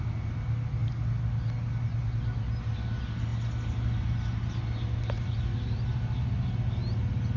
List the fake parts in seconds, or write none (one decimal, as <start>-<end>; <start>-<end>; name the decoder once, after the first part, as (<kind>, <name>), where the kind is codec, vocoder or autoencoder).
none